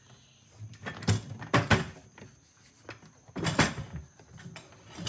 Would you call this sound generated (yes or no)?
no